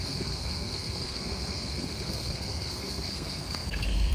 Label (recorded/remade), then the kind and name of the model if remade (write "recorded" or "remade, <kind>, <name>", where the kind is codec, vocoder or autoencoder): remade, codec, SNAC